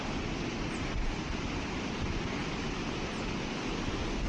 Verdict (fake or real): real